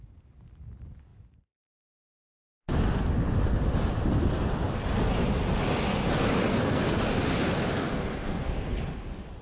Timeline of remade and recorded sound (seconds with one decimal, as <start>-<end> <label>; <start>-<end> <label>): 0.0-6.5 recorded; 6.5-7.0 remade; 7.0-8.0 recorded; 8.0-8.8 remade; 8.8-9.4 recorded